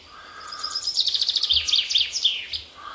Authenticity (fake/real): real